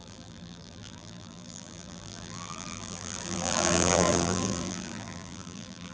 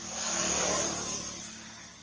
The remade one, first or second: first